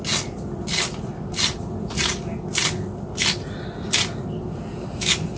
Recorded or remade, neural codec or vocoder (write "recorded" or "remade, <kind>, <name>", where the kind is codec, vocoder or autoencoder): recorded